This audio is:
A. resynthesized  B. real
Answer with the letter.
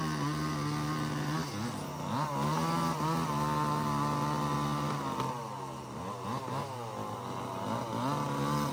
B